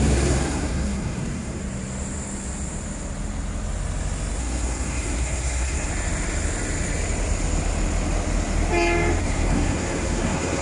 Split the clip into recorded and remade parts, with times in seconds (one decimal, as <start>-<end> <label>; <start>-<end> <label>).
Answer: 0.0-1.6 remade; 1.6-4.4 recorded; 4.4-5.9 remade; 5.9-9.2 recorded; 9.2-10.6 remade